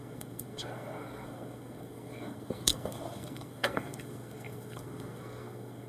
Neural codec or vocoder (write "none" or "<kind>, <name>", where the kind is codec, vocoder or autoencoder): codec, SNAC